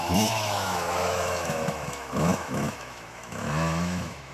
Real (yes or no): no